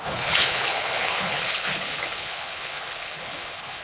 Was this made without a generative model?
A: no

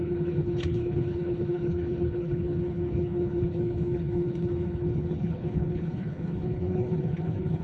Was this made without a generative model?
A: no